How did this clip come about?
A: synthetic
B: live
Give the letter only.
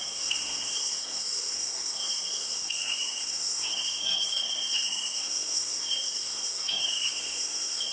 A